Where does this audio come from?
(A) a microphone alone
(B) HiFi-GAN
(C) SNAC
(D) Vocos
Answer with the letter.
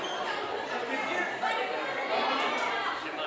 A